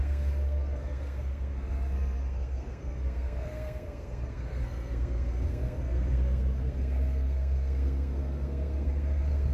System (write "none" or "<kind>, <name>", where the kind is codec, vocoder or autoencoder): codec, SNAC